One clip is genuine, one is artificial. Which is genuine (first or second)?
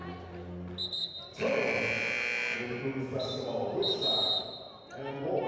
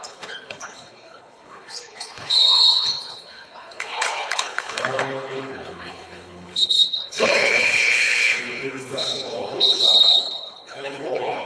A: first